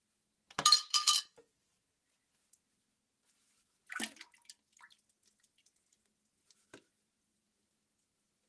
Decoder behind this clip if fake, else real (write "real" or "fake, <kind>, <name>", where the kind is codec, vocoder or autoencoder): real